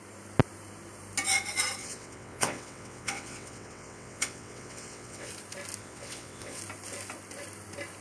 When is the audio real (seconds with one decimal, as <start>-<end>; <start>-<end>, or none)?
0.0-1.8; 5.3-5.8; 6.6-8.0